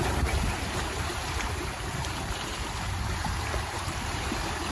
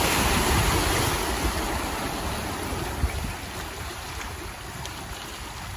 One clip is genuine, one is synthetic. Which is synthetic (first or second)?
first